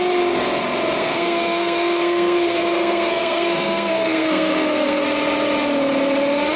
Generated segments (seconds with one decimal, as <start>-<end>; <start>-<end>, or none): 1.0-5.0